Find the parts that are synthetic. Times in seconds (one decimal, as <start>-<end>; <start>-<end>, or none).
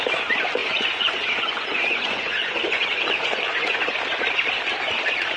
0.6-3.8